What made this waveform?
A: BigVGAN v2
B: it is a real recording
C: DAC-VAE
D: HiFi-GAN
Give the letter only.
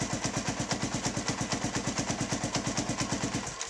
B